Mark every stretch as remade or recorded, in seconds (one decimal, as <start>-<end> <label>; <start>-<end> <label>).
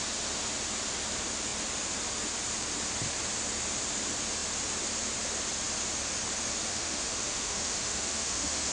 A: 0.0-6.7 recorded; 6.7-8.7 remade